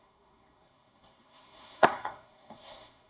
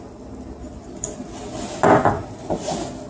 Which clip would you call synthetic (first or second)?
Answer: first